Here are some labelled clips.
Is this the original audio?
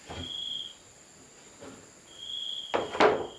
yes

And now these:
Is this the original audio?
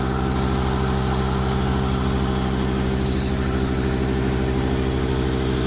yes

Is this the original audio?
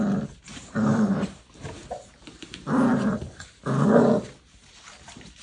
no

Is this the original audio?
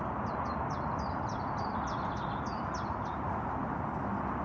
yes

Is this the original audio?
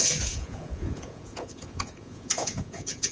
no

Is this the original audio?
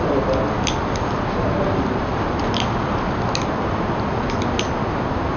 yes